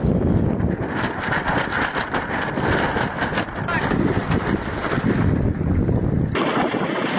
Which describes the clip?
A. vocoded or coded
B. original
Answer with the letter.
B